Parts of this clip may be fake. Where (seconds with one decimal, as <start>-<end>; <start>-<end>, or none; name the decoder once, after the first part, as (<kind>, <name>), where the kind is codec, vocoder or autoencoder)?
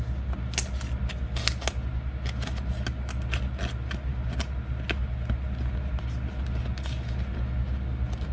none